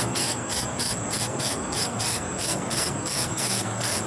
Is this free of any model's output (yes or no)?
no